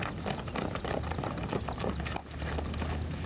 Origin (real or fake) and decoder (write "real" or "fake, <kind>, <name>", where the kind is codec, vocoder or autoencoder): real